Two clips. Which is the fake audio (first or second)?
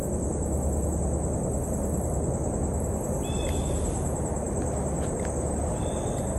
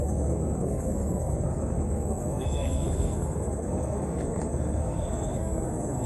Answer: second